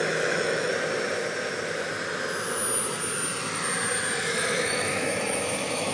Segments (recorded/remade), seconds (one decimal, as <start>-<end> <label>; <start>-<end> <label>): 0.0-0.7 remade; 0.7-4.2 recorded; 4.2-5.9 remade

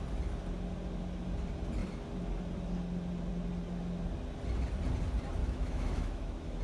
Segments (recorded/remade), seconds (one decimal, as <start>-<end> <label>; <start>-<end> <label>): 0.0-5.4 recorded; 5.4-6.6 remade

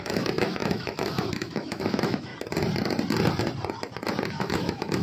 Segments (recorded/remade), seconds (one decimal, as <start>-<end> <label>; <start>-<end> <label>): 0.0-2.3 remade; 2.3-4.3 recorded; 4.3-5.0 remade